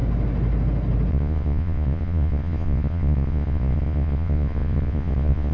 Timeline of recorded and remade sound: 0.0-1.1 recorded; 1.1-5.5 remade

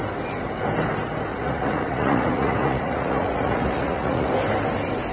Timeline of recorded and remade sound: 0.0-1.3 recorded; 1.3-4.3 remade; 4.3-5.1 recorded

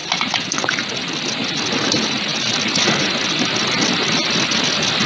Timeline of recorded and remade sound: 0.0-5.1 recorded

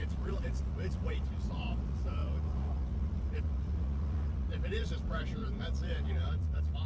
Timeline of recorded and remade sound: 0.0-6.9 remade

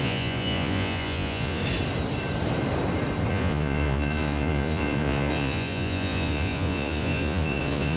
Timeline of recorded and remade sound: 0.0-1.6 remade; 1.6-3.3 recorded; 3.3-8.0 remade

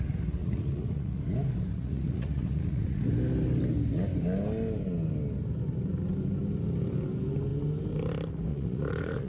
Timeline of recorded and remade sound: 0.0-0.4 recorded; 0.4-1.2 remade; 1.2-1.7 recorded; 1.7-3.1 remade; 3.1-8.5 recorded; 8.5-9.3 remade